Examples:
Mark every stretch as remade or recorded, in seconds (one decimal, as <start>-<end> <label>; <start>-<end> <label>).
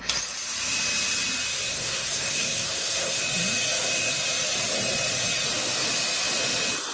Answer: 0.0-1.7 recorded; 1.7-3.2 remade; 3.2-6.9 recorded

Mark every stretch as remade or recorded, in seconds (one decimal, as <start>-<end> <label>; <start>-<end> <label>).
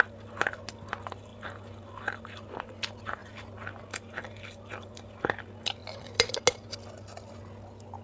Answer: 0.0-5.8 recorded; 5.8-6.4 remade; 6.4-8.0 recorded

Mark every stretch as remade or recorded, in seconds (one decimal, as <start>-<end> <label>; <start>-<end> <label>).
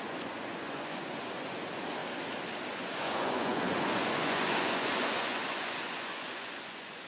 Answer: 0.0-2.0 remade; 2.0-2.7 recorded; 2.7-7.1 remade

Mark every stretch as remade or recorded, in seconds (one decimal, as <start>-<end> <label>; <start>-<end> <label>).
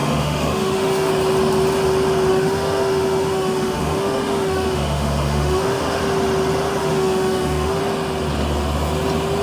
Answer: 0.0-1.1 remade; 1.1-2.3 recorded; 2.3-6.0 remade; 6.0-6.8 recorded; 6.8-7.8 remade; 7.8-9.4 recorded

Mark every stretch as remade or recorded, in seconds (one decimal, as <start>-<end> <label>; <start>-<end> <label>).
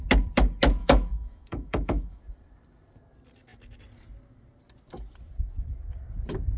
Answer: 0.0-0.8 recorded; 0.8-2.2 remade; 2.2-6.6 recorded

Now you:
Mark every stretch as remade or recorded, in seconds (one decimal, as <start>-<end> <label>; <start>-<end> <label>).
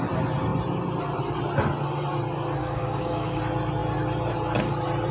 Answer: 0.0-2.6 recorded; 2.6-3.4 remade; 3.4-5.1 recorded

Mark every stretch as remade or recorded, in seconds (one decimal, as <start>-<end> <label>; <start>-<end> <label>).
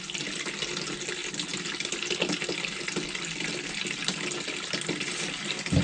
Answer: 0.0-5.8 recorded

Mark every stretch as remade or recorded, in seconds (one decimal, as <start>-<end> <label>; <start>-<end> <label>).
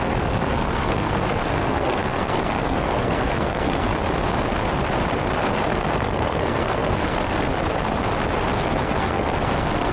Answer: 0.0-3.9 remade; 3.9-5.7 recorded; 5.7-7.5 remade; 7.5-8.5 recorded; 8.5-9.9 remade